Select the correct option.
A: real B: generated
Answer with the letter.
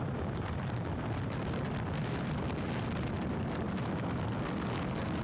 A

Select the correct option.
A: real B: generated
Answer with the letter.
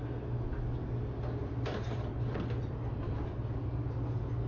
A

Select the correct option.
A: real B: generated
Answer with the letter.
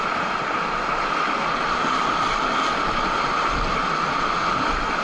A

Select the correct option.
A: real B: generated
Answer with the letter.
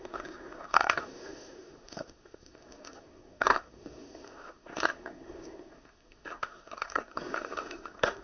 B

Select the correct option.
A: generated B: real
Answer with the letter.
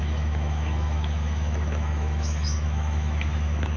A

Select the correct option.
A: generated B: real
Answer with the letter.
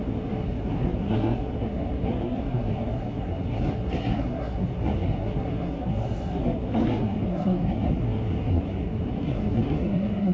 A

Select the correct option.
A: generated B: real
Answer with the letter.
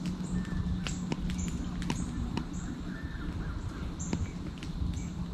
B